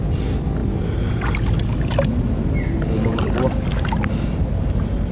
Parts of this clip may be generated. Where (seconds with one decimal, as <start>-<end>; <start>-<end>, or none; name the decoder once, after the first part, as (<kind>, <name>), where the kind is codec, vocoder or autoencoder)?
none